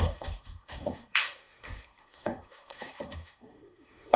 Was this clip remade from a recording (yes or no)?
yes